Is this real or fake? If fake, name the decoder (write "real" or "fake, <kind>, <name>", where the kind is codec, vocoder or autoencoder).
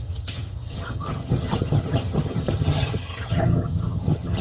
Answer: fake, vocoder, HiFi-GAN